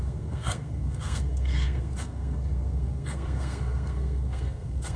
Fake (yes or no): yes